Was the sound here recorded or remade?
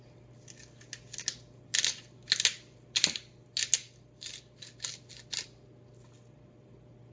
recorded